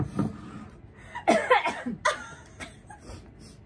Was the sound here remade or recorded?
recorded